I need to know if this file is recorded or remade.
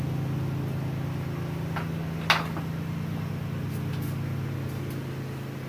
recorded